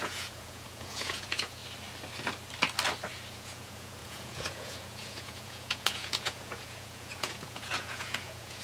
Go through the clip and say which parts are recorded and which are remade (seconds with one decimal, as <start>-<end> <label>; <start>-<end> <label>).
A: 0.0-1.6 remade; 1.6-3.3 recorded; 3.3-8.6 remade